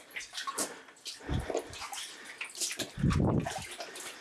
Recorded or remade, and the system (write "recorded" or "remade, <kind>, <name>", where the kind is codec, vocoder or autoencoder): recorded